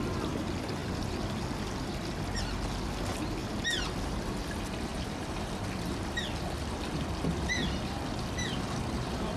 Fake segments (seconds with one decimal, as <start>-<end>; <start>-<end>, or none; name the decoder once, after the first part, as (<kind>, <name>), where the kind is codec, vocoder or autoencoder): 3.4-4.3 (vocoder, BigVGAN v2); 4.9-7.7